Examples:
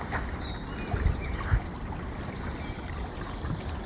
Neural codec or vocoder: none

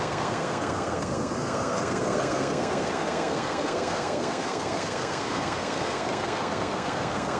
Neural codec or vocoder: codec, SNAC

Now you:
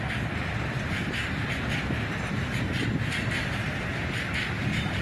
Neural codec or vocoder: none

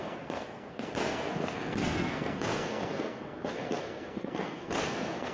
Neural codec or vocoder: codec, SNAC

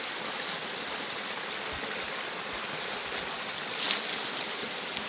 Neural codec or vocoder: none